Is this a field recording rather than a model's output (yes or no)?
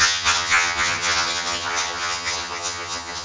no